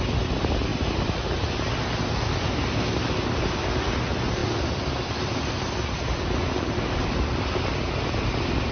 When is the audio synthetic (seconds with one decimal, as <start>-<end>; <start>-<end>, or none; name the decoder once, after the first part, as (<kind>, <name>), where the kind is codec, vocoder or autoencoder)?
none